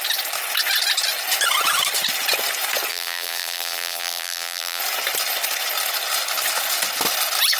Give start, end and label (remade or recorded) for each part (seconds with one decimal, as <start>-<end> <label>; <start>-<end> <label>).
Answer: 0.0-2.9 recorded; 2.9-4.8 remade; 4.8-7.6 recorded